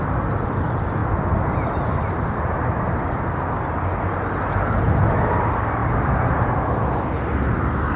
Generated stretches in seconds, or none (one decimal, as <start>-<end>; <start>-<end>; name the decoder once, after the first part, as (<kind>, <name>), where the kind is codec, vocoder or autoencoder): none